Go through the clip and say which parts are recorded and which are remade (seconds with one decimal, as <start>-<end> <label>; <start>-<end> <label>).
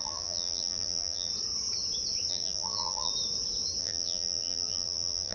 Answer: 0.0-1.3 remade; 1.3-2.3 recorded; 2.3-3.1 remade; 3.1-3.8 recorded; 3.8-5.3 remade